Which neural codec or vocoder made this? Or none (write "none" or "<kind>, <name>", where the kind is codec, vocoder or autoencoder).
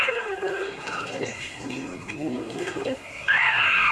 codec, SNAC